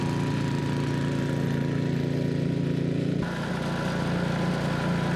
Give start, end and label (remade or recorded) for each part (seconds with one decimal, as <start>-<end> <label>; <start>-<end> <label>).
0.0-5.2 recorded